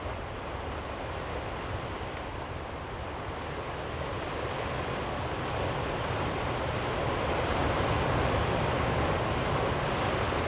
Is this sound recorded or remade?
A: recorded